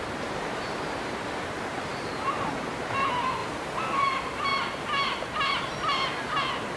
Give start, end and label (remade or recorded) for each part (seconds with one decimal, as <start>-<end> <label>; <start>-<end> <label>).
0.0-3.4 remade; 3.4-4.0 recorded; 4.0-4.5 remade; 4.5-6.2 recorded; 6.2-6.8 remade

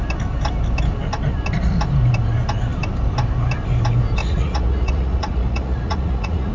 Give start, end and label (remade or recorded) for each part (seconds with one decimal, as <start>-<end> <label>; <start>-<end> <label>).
0.0-4.2 recorded; 4.2-6.5 remade

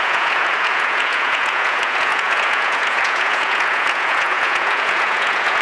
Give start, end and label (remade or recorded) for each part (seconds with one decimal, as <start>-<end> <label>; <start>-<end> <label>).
0.0-5.6 remade